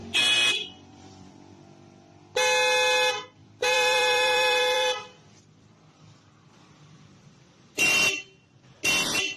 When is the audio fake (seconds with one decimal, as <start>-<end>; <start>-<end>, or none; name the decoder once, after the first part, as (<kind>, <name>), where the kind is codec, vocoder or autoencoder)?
0.0-1.3 (vocoder, BigVGAN v2); 3.4-8.1